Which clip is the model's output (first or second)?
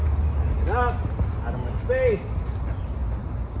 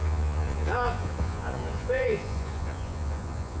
second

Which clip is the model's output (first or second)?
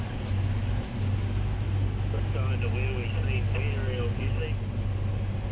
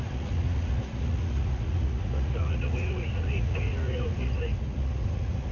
second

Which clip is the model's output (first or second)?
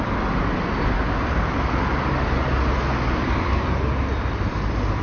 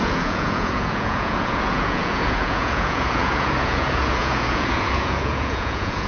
second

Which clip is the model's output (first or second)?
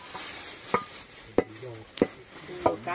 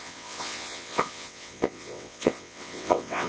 second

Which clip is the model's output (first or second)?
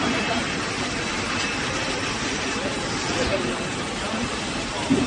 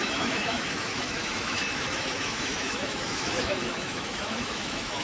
second